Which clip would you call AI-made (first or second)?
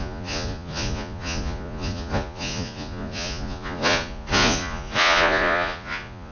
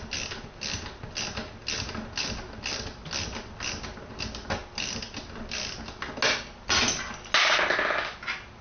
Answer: first